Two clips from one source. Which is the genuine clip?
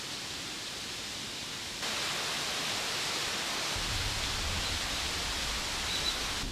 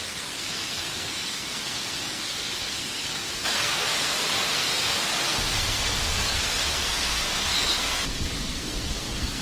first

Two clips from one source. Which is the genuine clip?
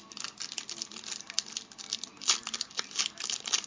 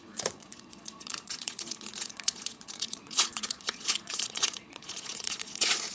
first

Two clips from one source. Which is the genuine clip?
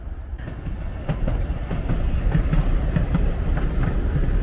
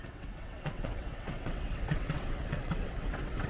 first